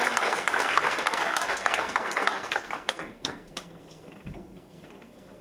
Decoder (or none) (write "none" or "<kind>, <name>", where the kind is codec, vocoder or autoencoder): codec, SNAC